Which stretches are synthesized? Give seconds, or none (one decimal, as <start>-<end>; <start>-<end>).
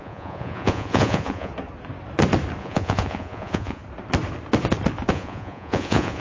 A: 0.0-1.5; 2.6-3.8; 5.1-6.2